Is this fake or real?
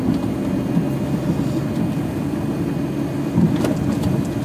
real